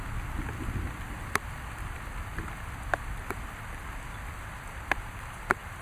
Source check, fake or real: real